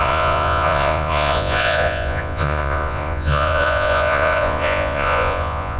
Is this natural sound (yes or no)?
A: no